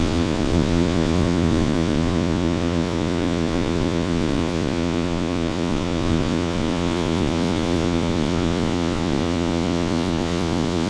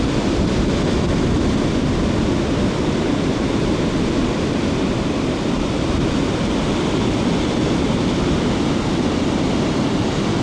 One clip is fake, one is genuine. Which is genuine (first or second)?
second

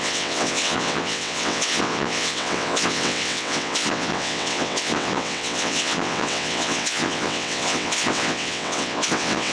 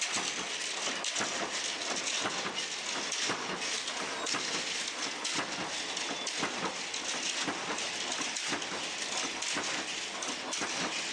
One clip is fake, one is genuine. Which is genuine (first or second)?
second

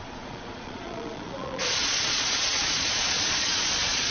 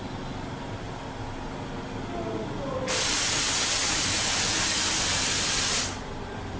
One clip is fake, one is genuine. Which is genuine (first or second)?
second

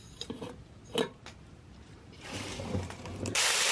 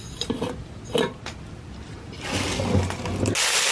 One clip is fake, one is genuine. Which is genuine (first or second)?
second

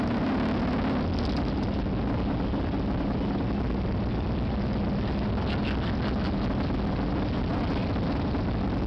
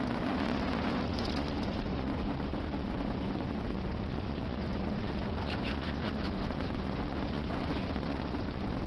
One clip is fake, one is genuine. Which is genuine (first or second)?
first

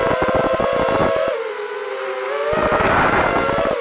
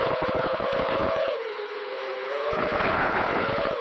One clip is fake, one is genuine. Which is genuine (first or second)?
first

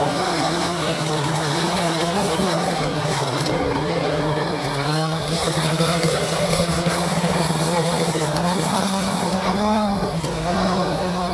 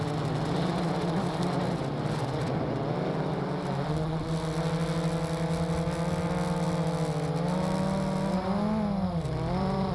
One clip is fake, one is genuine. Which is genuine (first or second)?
second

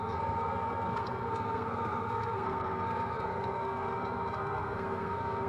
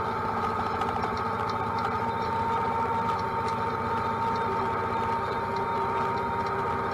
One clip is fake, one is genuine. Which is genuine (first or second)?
second